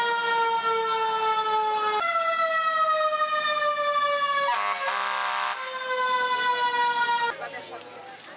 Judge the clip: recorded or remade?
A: recorded